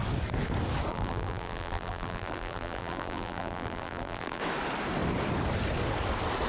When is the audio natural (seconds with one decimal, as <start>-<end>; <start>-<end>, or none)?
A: 0.0-0.9; 4.4-6.5